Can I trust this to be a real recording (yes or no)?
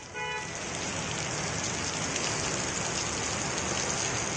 yes